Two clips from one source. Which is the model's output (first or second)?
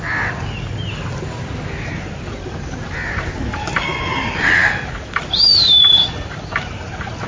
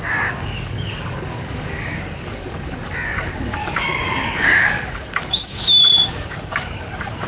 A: second